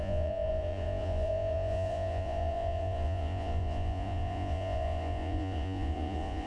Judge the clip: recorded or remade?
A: remade